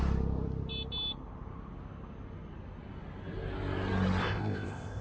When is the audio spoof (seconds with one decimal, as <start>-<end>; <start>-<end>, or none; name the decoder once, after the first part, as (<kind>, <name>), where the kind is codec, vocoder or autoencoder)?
4.2-5.0 (codec, ZipCodec)